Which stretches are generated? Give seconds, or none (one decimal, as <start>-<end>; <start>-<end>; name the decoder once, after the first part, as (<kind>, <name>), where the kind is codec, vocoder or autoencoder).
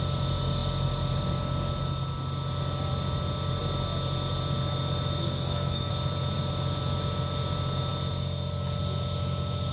5.2-5.9 (codec, SNAC)